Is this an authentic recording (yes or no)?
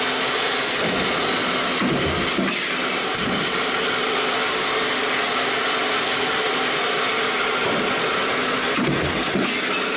yes